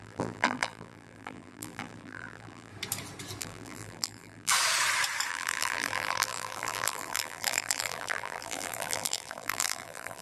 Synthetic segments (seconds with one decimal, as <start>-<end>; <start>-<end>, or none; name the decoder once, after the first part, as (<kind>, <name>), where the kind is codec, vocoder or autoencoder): 0.0-2.7 (vocoder, BigVGAN v2); 3.4-4.5; 5.3-10.2